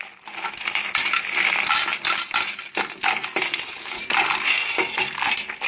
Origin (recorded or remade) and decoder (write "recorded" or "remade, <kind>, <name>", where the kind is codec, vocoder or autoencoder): recorded